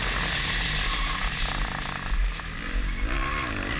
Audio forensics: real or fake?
real